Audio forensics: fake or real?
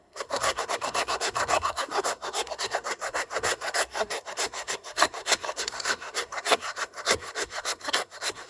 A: fake